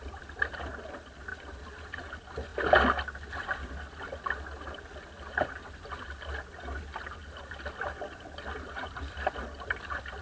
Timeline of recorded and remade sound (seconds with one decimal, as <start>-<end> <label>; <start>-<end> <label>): 0.0-2.5 remade; 2.5-7.4 recorded; 7.4-10.2 remade